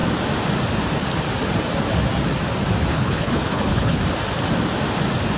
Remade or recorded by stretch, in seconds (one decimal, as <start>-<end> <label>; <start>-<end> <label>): 0.0-2.9 recorded; 2.9-4.0 remade; 4.0-5.4 recorded